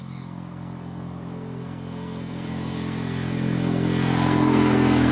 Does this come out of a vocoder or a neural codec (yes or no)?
yes